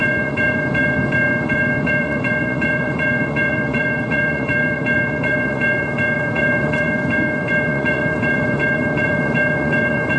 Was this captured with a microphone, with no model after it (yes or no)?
no